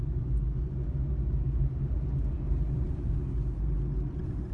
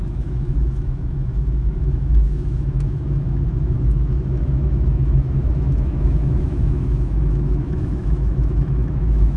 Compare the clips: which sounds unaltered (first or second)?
first